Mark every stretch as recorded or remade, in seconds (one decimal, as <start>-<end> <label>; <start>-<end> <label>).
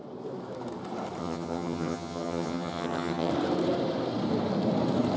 0.0-1.2 recorded; 1.2-3.3 remade; 3.3-5.2 recorded